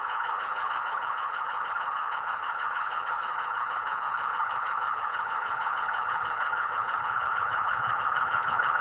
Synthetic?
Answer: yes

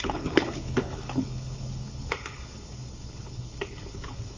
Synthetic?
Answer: yes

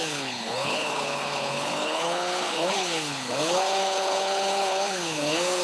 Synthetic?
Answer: yes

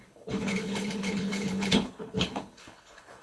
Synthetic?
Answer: yes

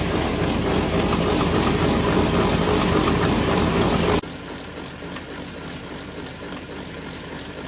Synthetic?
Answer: no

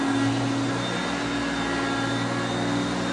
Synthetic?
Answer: no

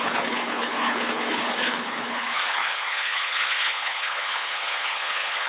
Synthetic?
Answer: yes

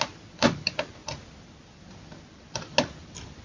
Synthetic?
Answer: no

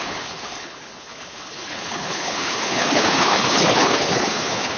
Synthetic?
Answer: yes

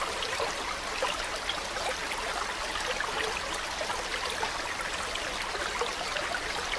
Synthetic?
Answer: no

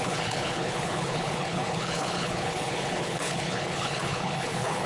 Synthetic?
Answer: yes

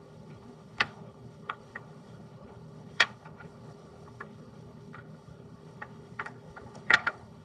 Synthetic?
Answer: yes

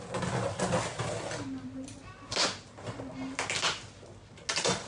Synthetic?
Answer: no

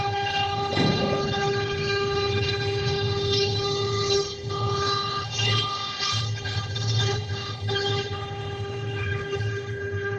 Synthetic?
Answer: yes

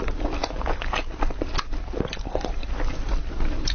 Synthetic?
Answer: no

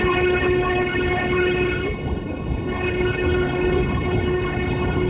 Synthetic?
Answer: yes